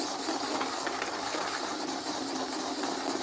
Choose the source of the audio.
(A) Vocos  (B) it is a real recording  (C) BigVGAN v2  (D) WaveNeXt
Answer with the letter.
B